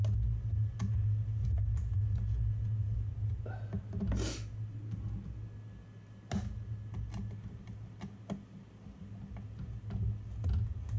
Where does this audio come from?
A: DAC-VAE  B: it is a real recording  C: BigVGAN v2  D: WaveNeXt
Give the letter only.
B